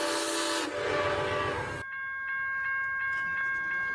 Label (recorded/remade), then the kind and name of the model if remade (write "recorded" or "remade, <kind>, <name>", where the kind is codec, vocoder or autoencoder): recorded